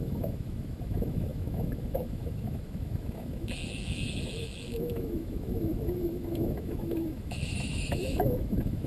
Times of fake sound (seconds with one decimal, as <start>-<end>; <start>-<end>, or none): 0.0-8.9